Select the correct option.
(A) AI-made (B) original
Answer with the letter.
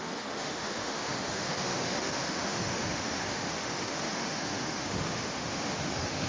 A